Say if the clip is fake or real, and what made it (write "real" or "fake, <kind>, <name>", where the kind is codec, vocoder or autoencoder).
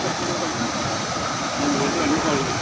real